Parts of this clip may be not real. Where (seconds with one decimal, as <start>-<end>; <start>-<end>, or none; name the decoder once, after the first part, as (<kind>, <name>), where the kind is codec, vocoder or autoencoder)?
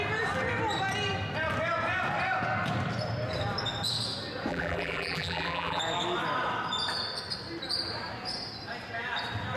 4.5-5.8 (vocoder, BigVGAN v2)